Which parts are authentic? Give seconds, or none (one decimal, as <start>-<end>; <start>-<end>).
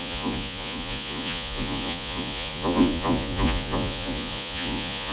none